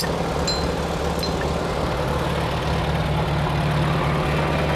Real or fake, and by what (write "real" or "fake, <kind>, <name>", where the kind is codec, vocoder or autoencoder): real